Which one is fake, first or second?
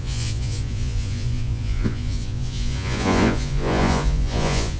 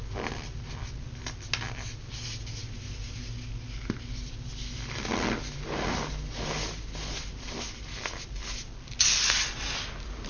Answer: first